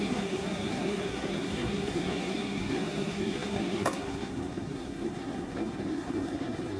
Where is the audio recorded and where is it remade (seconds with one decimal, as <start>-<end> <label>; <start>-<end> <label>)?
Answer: 0.0-6.8 remade